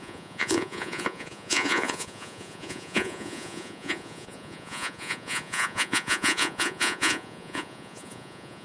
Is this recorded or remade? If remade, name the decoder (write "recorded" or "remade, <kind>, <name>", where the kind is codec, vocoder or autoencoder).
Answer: remade, vocoder, Vocos